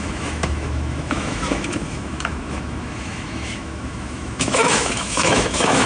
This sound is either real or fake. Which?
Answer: fake